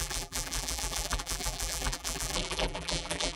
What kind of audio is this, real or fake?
fake